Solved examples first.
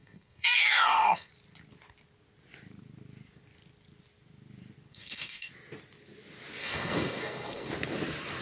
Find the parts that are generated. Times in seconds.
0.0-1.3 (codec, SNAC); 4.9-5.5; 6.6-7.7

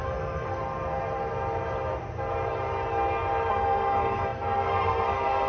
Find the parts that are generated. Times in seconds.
0.0-0.6 (codec, SNAC); 3.5-5.5

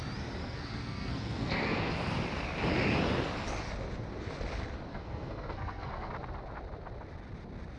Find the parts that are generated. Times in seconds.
0.4-1.9 (codec, SNAC); 4.9-6.1

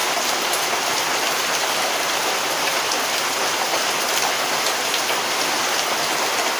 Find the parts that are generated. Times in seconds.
none

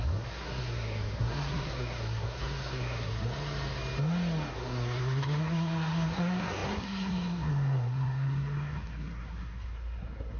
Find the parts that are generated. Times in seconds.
0.0-3.1 (codec, SNAC); 4.5-10.4

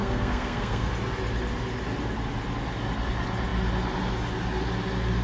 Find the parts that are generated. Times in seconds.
0.0-0.9 (codec, SNAC)

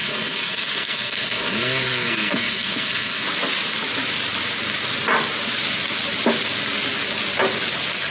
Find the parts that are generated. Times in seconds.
0.0-3.2 (codec, SNAC)